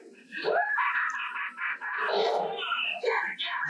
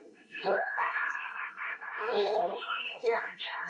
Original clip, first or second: first